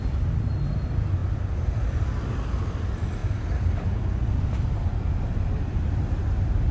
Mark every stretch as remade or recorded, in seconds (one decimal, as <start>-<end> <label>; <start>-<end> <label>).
0.0-6.7 recorded